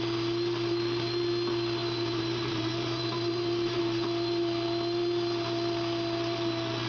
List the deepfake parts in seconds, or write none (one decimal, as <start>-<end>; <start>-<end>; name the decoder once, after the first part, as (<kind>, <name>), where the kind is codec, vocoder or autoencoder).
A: 1.8-3.8 (vocoder, BigVGAN v2)